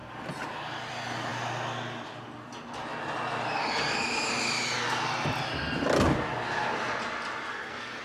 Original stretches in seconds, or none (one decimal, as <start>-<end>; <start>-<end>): 0.0-7.5